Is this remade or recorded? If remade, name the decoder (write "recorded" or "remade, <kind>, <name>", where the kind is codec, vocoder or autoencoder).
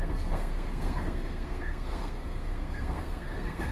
remade, codec, SNAC